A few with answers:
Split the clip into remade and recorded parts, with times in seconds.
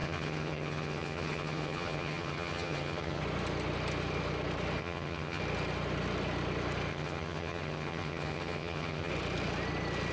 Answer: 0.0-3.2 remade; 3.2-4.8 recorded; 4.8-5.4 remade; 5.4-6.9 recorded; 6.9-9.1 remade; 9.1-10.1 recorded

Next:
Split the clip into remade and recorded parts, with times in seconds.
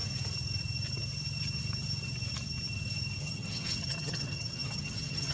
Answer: 0.0-3.2 recorded; 3.2-5.3 remade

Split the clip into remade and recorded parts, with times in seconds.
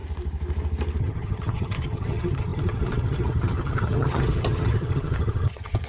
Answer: 0.0-1.0 recorded; 1.0-5.9 remade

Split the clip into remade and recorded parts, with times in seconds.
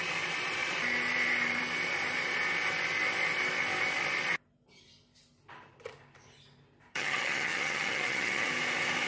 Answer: 0.0-6.9 recorded; 6.9-8.5 remade; 8.5-9.1 recorded